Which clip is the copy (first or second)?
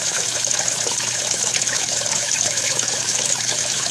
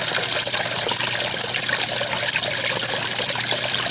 first